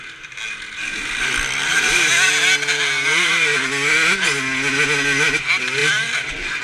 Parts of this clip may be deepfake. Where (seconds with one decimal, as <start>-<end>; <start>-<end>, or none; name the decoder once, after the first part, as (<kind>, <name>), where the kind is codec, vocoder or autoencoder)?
1.6-2.1 (vocoder, BigVGAN v2); 5.8-6.6